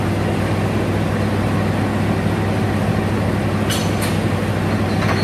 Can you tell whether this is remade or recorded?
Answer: recorded